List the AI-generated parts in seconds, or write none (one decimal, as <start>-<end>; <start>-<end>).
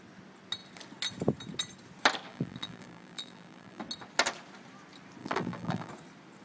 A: 2.3-3.8; 5.2-5.9